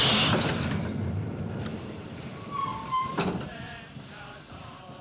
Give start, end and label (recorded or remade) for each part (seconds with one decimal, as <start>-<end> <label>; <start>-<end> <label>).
0.0-1.7 recorded; 1.7-3.8 remade; 3.8-5.0 recorded